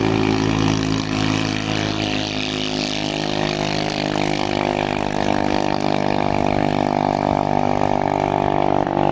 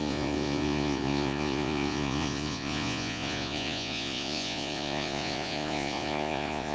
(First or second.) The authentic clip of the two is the first